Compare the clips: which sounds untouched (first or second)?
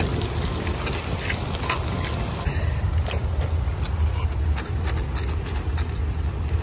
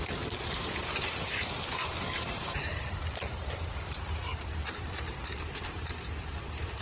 first